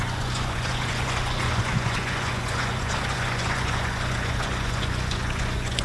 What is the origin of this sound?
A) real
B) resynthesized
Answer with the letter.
B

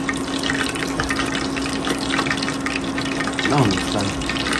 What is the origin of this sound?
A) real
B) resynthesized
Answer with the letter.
A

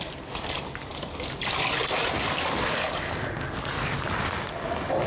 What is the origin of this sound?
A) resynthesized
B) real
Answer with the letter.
B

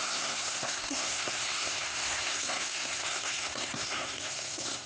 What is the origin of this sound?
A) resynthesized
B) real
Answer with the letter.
A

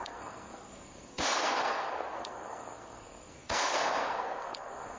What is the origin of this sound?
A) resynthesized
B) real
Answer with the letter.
A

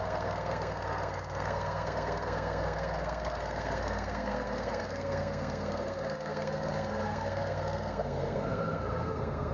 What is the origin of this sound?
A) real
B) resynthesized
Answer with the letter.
B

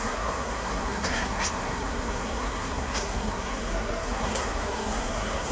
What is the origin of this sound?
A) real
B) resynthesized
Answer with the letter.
B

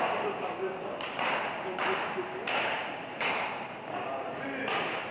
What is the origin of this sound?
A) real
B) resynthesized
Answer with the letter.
A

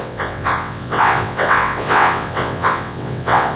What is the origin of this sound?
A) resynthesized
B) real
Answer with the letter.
A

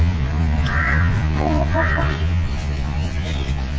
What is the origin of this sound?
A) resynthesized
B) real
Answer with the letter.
A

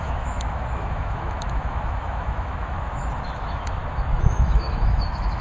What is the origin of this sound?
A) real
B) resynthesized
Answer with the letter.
B